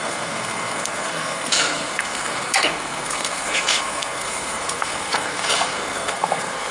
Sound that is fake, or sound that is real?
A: fake